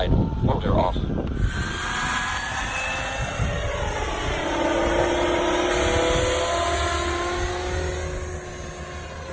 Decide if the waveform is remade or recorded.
recorded